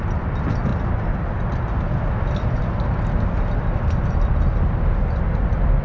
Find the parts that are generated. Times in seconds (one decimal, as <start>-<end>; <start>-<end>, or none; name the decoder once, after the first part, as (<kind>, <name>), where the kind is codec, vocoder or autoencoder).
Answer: none